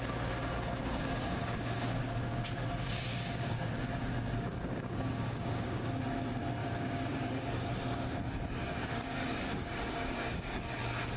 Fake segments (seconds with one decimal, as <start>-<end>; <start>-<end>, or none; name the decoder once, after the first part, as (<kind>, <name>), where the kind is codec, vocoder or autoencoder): 0.8-6.0 (codec, DAC); 6.6-7.7; 8.6-10.6